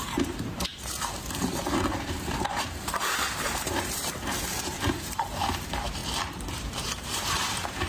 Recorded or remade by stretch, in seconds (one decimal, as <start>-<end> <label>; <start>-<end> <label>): 0.0-7.9 remade